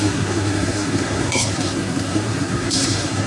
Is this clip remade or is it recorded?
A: remade